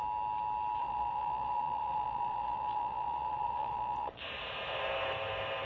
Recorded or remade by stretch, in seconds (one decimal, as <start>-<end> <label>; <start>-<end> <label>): 0.0-0.8 recorded; 0.8-4.2 remade; 4.2-5.7 recorded